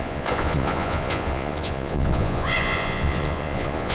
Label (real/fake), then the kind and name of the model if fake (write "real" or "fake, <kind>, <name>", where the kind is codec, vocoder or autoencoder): fake, vocoder, Vocos